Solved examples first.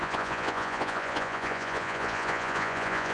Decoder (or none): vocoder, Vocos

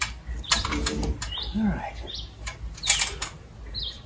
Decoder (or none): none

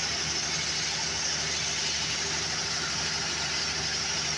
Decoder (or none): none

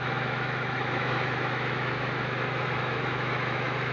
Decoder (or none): autoencoder, DAC-VAE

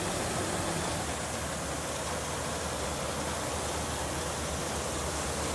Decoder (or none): none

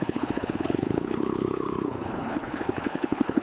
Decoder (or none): codec, HILCodec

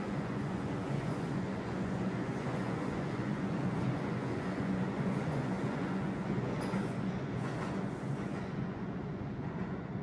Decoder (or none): vocoder, Vocos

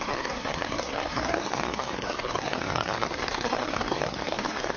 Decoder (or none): codec, SNAC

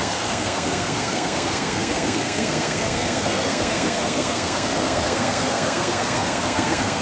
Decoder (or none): codec, SNAC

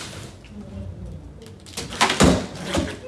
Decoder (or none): none